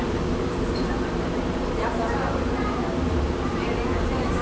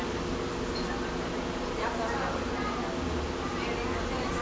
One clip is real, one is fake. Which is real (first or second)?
second